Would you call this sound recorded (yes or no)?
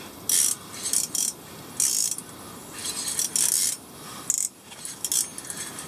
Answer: yes